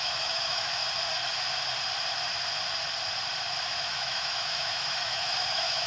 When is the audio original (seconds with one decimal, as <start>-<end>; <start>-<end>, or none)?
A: 0.8-3.8